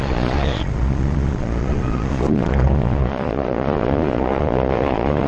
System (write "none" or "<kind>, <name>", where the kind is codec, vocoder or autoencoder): vocoder, Vocos